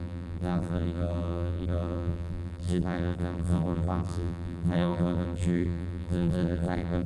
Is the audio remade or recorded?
remade